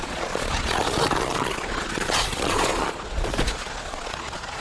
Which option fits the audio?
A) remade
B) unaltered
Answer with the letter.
A